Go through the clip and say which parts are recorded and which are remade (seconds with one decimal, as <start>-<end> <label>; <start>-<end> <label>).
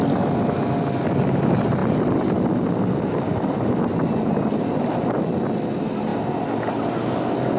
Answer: 0.0-1.8 recorded; 1.8-3.7 remade; 3.7-7.6 recorded